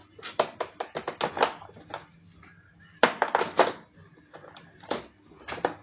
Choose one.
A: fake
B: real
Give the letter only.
B